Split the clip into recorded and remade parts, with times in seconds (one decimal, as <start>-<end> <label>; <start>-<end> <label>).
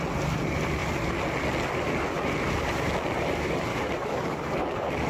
0.0-3.7 recorded; 3.7-5.1 remade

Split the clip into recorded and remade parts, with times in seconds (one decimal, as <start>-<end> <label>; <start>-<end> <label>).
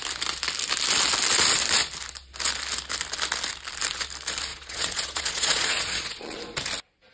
0.0-4.5 recorded; 4.5-6.4 remade; 6.4-7.1 recorded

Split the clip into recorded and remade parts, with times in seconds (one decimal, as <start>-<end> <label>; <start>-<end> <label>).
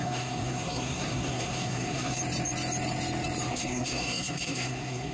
0.0-2.2 remade; 2.2-3.5 recorded; 3.5-5.1 remade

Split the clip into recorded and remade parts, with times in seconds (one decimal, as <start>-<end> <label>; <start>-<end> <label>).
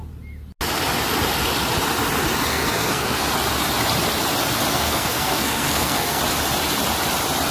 0.0-2.5 recorded; 2.5-3.3 remade; 3.3-4.7 recorded; 4.7-6.2 remade; 6.2-7.5 recorded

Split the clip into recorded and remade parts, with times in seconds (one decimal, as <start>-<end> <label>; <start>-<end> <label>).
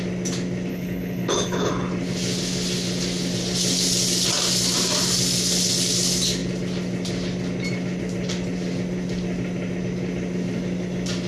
0.0-0.7 recorded; 0.7-1.7 remade; 1.7-11.3 recorded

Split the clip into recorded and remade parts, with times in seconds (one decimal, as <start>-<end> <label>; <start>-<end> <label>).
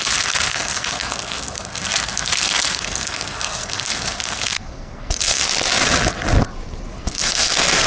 0.0-5.4 remade; 5.4-7.0 recorded; 7.0-7.9 remade